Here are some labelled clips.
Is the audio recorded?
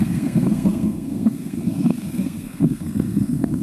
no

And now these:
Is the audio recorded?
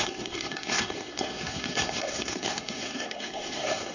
no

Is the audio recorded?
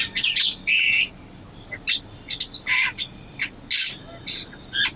yes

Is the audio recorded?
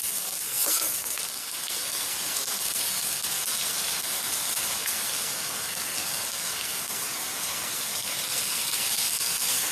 no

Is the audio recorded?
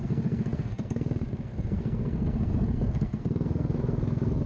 no